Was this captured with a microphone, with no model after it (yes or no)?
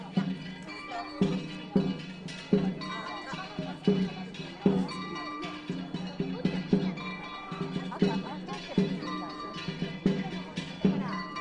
yes